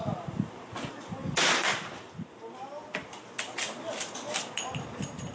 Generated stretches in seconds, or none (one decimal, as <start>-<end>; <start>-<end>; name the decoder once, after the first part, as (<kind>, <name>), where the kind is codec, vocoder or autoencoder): none